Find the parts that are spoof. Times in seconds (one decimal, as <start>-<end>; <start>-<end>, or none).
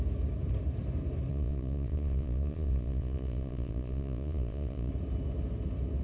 1.3-4.9